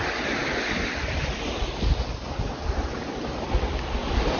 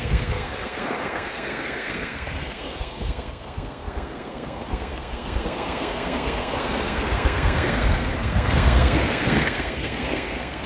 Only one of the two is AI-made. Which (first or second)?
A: second